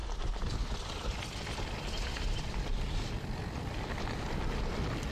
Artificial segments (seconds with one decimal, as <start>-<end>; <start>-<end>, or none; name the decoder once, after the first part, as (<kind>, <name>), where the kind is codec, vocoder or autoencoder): none

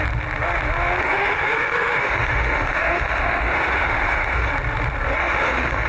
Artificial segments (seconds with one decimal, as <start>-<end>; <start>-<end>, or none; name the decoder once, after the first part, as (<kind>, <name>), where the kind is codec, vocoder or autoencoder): 1.0-4.5 (autoencoder, DAC-VAE); 5.2-5.9

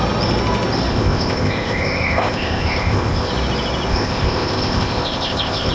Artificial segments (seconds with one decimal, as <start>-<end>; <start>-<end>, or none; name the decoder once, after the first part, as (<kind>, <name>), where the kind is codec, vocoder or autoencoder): 0.9-3.3 (codec, ZipCodec); 3.9-5.7

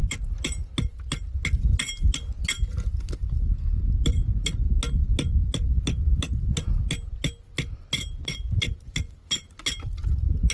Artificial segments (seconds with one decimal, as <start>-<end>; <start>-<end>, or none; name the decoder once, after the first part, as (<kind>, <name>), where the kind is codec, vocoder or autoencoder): none

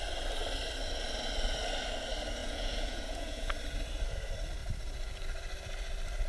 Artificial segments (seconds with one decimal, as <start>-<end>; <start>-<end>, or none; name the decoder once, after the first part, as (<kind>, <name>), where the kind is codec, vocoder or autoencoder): 2.4-3.5 (vocoder, Vocos)

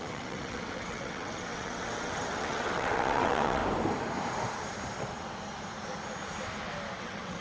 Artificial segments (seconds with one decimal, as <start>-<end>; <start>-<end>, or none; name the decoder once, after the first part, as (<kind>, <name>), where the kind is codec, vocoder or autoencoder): 0.0-3.6 (vocoder, WaveNeXt); 7.0-7.4

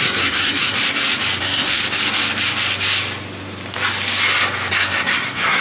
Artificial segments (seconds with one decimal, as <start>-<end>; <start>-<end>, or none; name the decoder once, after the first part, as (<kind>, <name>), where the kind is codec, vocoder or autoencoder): 0.0-0.8 (codec, SNAC); 1.4-1.8; 4.7-5.6